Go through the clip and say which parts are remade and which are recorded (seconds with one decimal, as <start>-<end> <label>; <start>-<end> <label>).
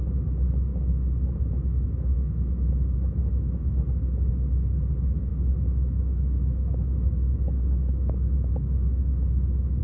0.0-0.7 recorded; 0.7-4.3 remade; 4.3-5.3 recorded; 5.3-9.8 remade